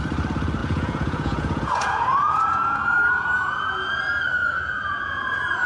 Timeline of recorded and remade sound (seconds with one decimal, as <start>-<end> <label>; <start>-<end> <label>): 0.0-0.6 recorded; 0.6-4.0 remade; 4.0-4.4 recorded; 4.4-5.7 remade